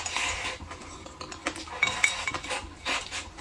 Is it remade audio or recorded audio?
recorded